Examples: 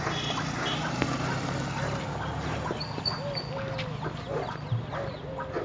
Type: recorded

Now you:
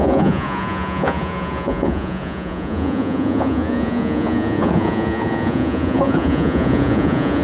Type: remade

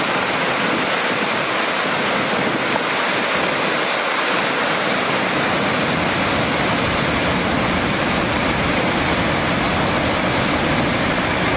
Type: recorded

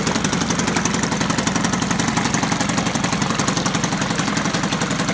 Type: recorded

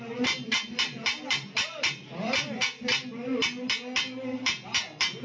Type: recorded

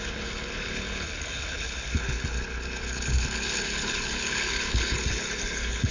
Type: remade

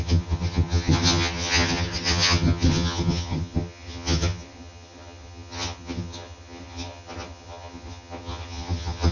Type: remade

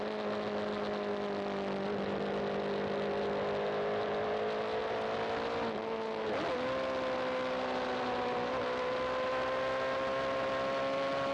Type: recorded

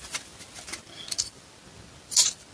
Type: recorded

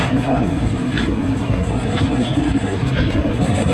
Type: remade